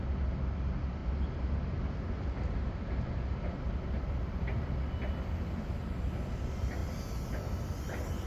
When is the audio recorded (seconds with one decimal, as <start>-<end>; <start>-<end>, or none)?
0.0-8.3